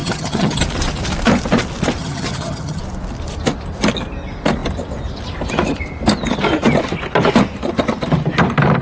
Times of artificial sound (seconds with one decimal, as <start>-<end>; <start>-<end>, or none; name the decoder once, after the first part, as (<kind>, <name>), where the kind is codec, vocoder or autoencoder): 0.0-0.6 (vocoder, HiFi-GAN); 2.0-2.8